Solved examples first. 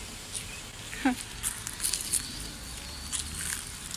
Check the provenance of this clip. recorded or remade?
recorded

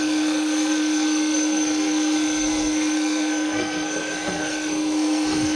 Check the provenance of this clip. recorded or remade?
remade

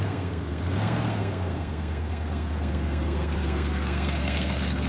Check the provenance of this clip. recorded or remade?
remade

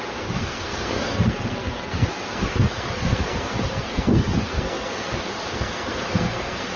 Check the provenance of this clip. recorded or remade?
remade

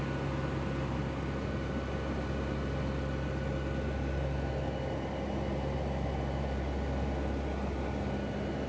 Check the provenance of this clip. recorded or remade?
recorded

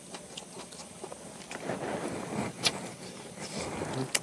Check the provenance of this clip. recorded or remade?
recorded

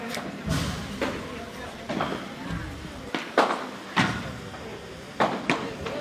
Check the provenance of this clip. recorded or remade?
recorded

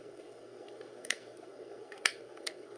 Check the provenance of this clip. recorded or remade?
remade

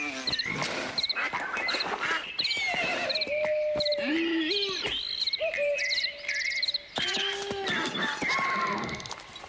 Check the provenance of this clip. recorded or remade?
recorded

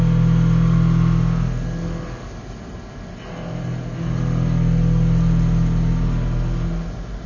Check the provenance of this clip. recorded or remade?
recorded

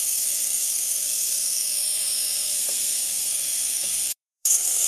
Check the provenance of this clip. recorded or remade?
remade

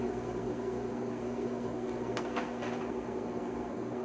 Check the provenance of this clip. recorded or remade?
remade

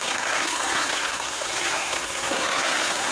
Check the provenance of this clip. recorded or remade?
remade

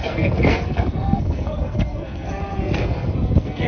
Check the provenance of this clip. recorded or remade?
remade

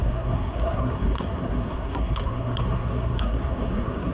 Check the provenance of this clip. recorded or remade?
remade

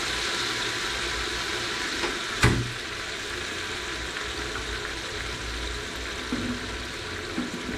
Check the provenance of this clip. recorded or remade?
recorded